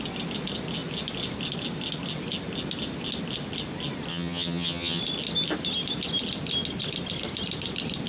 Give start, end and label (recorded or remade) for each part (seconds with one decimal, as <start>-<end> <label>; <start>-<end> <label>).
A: 0.0-4.1 recorded; 4.1-5.0 remade; 5.0-8.1 recorded